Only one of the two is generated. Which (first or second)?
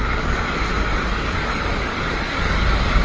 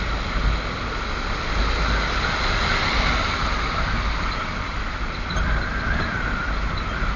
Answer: first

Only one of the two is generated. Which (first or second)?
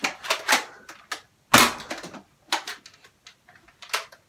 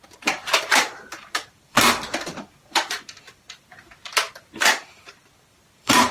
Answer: second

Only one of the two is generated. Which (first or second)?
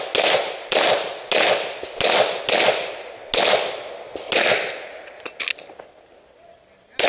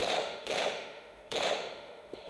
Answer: second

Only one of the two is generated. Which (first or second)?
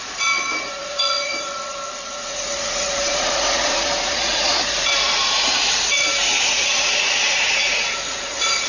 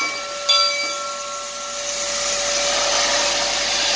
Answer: first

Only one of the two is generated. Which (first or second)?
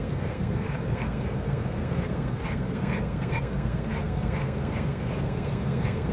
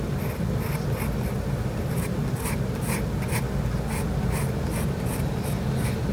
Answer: first